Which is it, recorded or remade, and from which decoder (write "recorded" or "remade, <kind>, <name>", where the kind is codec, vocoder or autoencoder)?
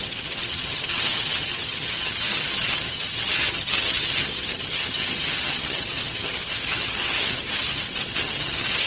remade, vocoder, HiFi-GAN